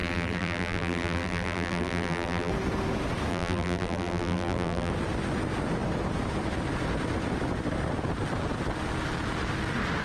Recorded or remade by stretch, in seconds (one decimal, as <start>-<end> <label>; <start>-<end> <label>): 0.0-2.5 remade; 2.5-3.3 recorded; 3.3-4.9 remade; 4.9-10.0 recorded